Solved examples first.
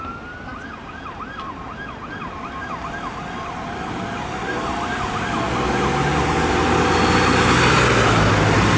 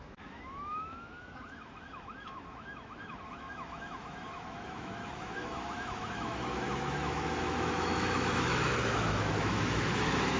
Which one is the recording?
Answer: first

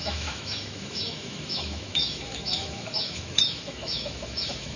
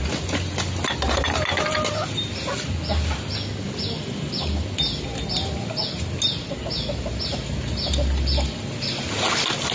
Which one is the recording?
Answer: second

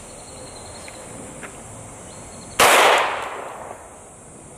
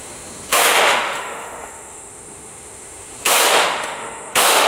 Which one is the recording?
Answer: first